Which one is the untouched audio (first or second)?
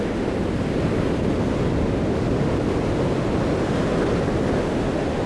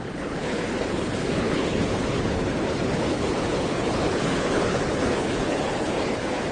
first